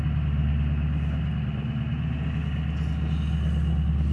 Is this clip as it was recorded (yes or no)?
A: yes